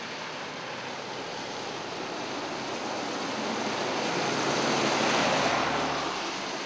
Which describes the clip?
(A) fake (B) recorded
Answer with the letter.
B